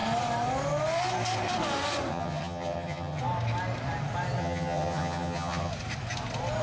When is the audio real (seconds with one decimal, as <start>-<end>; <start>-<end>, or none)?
0.0-2.1; 3.2-4.4; 5.7-6.6